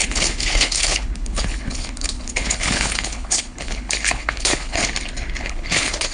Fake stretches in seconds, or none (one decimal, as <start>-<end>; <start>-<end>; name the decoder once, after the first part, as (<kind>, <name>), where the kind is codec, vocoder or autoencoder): 0.0-4.8 (codec, HILCodec); 5.4-6.1